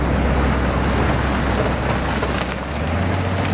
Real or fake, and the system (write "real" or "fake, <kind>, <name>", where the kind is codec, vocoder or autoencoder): real